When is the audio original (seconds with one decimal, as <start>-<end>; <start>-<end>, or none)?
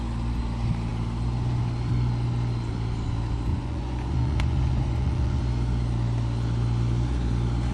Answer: 0.0-3.5; 5.4-7.7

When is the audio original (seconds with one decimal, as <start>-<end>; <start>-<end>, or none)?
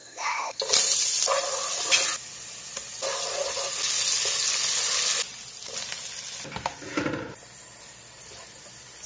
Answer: 0.6-9.1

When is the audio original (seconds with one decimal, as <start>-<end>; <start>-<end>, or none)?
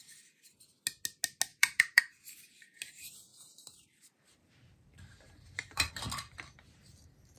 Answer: 0.0-1.5; 2.0-3.3; 5.9-7.4